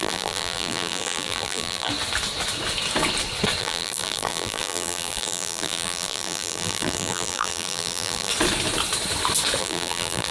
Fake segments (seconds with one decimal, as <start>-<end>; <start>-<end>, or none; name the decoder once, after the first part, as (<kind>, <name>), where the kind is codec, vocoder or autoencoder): 0.0-1.9 (vocoder, BigVGAN v2); 3.6-8.3; 9.6-10.3